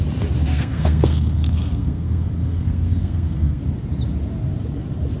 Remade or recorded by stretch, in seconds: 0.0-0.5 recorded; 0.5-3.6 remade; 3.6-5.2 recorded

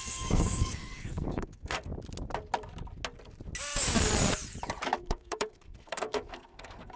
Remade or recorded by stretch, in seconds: 0.0-1.9 remade; 1.9-5.0 recorded; 5.0-7.0 remade

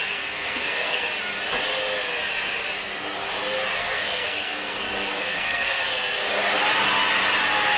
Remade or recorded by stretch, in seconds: 0.0-1.1 remade; 1.1-3.8 recorded; 3.8-5.8 remade; 5.8-7.8 recorded

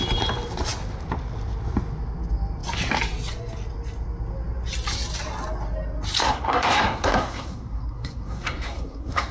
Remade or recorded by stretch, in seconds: 0.0-6.2 recorded; 6.2-9.3 remade

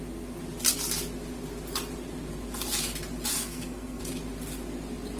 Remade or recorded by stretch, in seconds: 0.0-3.3 recorded; 3.3-4.0 remade; 4.0-5.2 recorded

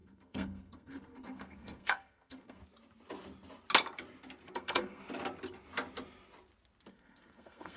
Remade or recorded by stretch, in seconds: 0.0-2.6 remade; 2.6-4.5 recorded; 4.5-5.0 remade; 5.0-6.9 recorded; 6.9-7.8 remade